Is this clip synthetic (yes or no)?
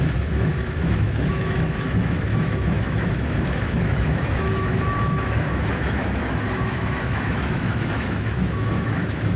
yes